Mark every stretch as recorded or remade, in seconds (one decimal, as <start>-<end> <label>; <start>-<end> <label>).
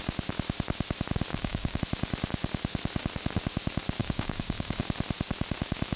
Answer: 0.0-1.3 recorded; 1.3-1.8 remade; 1.8-4.0 recorded; 4.0-4.8 remade; 4.8-6.0 recorded